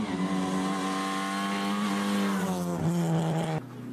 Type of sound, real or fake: real